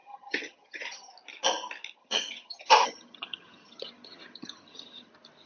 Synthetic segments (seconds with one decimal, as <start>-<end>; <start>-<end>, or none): 0.0-1.1; 2.0-5.1